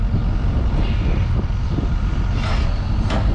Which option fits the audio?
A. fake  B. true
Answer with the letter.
B